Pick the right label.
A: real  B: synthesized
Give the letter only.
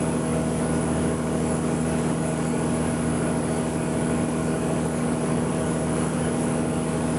B